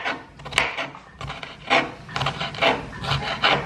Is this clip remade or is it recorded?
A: recorded